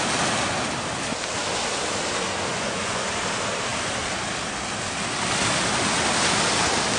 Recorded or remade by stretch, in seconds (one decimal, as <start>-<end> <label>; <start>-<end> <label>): 0.0-2.5 recorded; 2.5-3.2 remade; 3.2-7.0 recorded